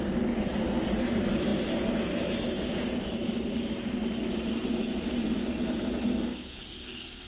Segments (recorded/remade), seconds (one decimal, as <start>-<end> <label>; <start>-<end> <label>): 0.0-6.3 recorded; 6.3-7.3 remade